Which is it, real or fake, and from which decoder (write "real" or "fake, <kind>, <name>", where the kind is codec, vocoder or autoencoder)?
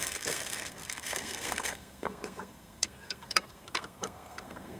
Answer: fake, codec, SNAC